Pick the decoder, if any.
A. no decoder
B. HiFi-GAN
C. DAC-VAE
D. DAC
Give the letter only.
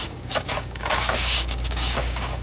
D